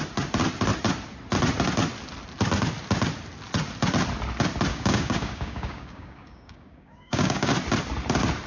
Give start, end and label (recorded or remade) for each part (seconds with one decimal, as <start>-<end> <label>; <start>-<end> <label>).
0.0-4.7 recorded; 4.7-7.5 remade; 7.5-8.5 recorded